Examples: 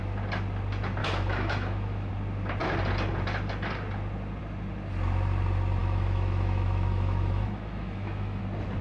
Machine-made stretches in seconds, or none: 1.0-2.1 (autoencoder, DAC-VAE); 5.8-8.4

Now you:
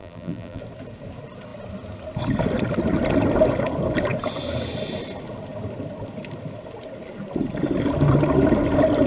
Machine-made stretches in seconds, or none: 0.0-0.6 (vocoder, BigVGAN v2)

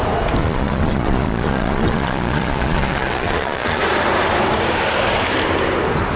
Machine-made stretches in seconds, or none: 0.4-3.8 (vocoder, Vocos)

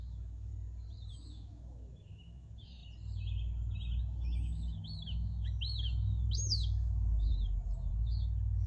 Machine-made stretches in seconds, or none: 0.0-0.5 (autoencoder, DAC-VAE); 1.1-2.8; 4.0-7.3; 7.9-8.7

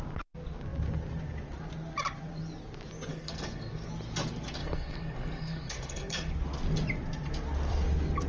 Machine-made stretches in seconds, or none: 3.1-3.9 (codec, SNAC); 4.6-6.3

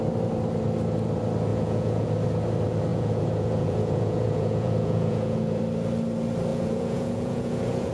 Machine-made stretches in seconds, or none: 1.5-2.1 (vocoder, Vocos); 2.9-5.6; 6.5-7.9